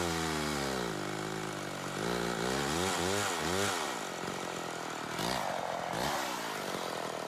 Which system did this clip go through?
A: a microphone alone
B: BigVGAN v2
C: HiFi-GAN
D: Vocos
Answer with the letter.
A